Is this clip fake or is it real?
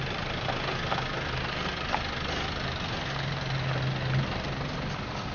real